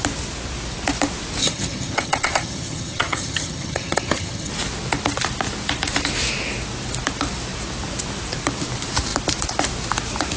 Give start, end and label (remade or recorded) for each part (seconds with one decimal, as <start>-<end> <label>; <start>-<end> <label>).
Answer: 0.0-1.4 recorded; 1.4-4.5 remade; 4.5-10.4 recorded

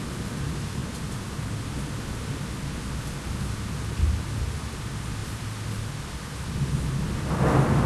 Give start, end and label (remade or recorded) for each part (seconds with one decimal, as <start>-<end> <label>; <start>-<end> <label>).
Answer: 0.0-0.8 recorded; 0.8-1.7 remade; 1.7-7.9 recorded

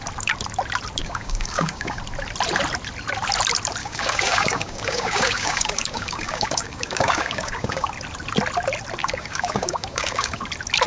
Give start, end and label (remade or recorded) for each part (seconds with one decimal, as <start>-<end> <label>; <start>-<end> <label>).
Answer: 0.0-1.0 recorded; 1.0-2.0 remade; 2.0-3.8 recorded; 3.8-7.9 remade; 7.9-9.0 recorded; 9.0-10.4 remade; 10.4-10.9 recorded

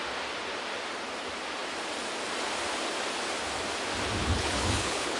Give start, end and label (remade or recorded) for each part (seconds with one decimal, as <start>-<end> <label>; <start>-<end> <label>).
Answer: 0.0-4.2 recorded; 4.2-5.2 remade

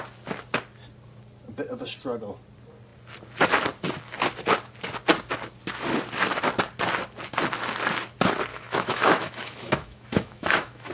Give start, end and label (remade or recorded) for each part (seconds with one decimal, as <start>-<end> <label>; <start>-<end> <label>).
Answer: 0.0-8.5 recorded; 8.5-10.9 remade

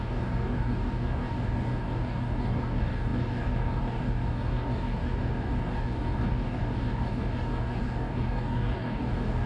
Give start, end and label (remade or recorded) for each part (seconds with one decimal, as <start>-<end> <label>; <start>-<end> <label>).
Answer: 0.0-9.5 remade